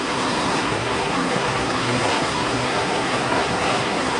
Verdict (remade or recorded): remade